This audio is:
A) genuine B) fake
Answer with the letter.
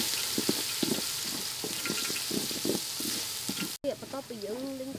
A